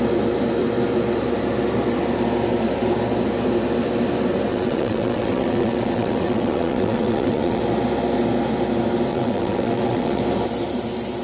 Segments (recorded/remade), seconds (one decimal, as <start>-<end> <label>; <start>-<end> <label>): 0.0-4.5 recorded; 4.5-7.6 remade; 7.6-9.1 recorded; 9.1-10.2 remade; 10.2-11.2 recorded